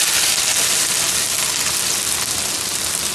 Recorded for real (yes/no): yes